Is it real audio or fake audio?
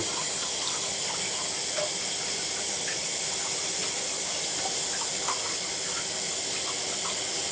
real